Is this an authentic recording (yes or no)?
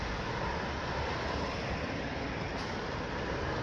yes